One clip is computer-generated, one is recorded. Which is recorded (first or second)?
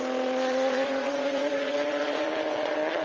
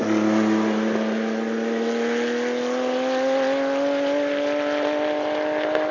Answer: second